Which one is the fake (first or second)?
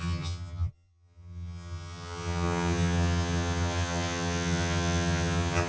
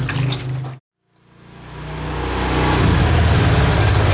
first